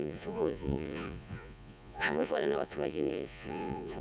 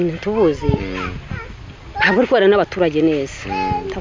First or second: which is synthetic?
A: first